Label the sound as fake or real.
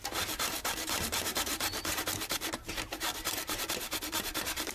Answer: fake